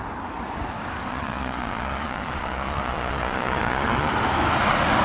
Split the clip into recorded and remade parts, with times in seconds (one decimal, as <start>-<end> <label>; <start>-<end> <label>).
0.0-1.1 recorded; 1.1-4.1 remade; 4.1-5.0 recorded